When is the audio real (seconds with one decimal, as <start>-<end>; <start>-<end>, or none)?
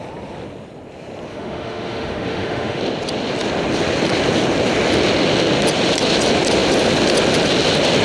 0.0-1.3; 2.8-8.0